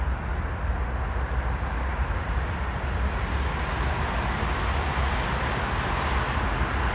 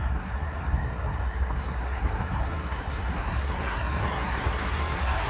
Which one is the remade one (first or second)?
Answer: second